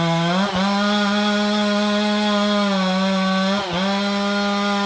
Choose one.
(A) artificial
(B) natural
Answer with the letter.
B